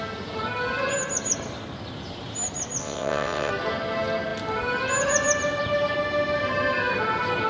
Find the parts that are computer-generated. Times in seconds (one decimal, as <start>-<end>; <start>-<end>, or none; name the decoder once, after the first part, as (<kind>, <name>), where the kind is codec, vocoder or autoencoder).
2.8-3.5 (vocoder, WaveNeXt)